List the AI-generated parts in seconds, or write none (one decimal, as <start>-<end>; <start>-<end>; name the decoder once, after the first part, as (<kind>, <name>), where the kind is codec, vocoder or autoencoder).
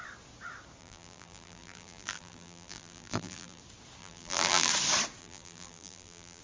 0.8-3.6 (vocoder, BigVGAN v2); 4.0-4.7; 5.2-6.4